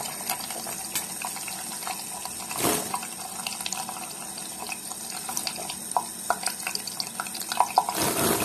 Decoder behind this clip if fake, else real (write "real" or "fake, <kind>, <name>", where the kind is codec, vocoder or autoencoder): real